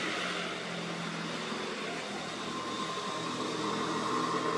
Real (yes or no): yes